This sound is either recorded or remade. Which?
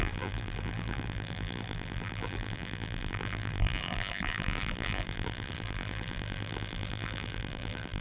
remade